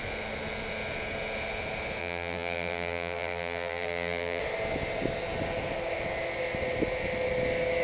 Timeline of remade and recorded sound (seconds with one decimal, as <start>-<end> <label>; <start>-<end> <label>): 0.0-2.0 recorded; 2.0-4.4 remade; 4.4-7.8 recorded